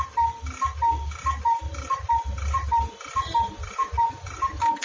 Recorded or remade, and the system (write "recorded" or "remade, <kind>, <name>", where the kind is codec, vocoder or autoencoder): recorded